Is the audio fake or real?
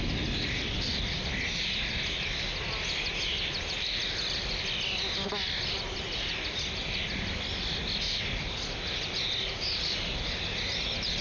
real